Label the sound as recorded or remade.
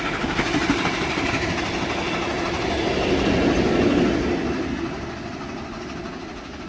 recorded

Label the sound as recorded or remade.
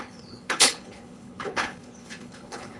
remade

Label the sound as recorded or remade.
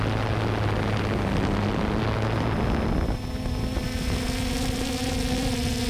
recorded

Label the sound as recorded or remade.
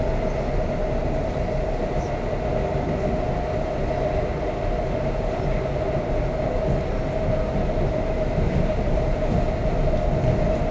recorded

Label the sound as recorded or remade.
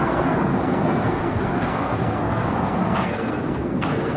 remade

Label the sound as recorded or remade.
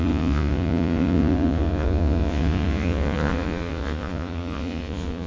remade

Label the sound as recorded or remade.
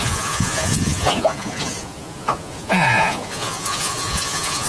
remade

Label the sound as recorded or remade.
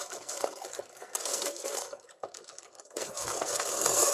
remade